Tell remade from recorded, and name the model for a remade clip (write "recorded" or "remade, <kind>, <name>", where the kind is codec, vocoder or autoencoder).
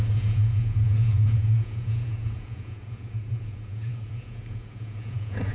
remade, vocoder, Vocos